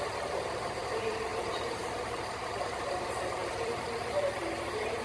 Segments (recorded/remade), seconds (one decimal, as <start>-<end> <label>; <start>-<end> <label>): 0.0-5.0 remade